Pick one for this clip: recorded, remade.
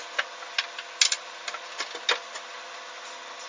recorded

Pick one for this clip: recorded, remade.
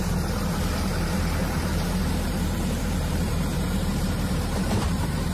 remade